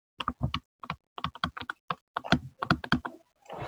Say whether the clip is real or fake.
real